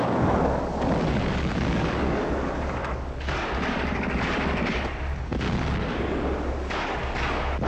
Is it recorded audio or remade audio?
remade